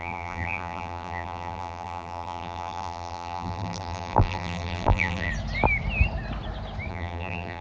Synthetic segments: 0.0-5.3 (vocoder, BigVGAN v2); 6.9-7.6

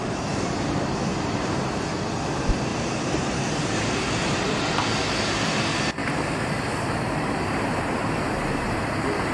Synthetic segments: 0.0-0.7 (vocoder, BigVGAN v2); 1.1-1.7; 2.7-4.4; 6.0-8.8

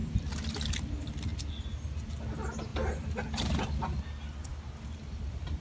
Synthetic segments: 0.0-0.9 (vocoder, BigVGAN v2); 2.7-4.0

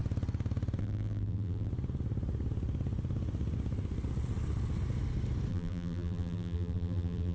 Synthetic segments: 0.8-1.7 (vocoder, BigVGAN v2); 5.5-7.3

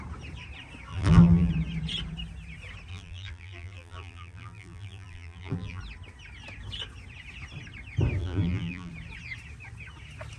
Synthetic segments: 0.9-1.5 (vocoder, BigVGAN v2); 2.9-5.8; 8.2-8.9

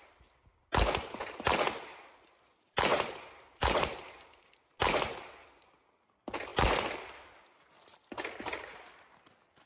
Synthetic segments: 2.9-4.5 (vocoder, BigVGAN v2)